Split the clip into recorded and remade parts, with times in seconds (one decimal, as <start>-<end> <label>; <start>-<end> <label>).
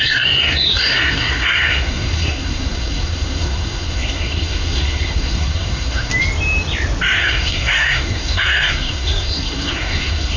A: 0.0-6.1 remade; 6.1-7.2 recorded; 7.2-10.4 remade